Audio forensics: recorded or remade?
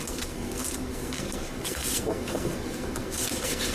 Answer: remade